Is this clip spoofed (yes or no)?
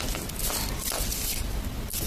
no